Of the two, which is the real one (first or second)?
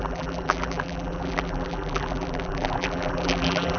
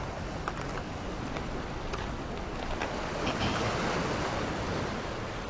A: second